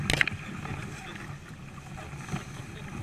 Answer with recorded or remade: recorded